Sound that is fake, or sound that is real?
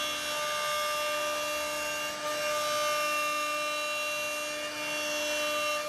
real